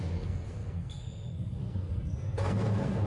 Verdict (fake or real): fake